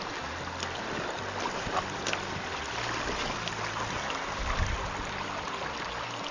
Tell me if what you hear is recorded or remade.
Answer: recorded